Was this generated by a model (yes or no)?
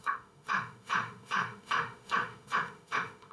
yes